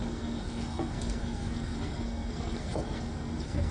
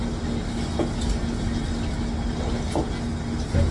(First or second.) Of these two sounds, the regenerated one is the first